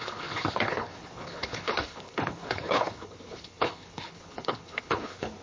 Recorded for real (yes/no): no